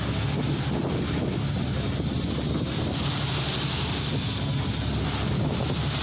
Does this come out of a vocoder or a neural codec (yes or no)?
no